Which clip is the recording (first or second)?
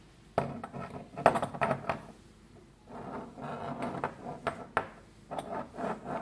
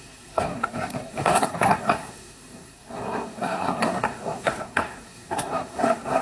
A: first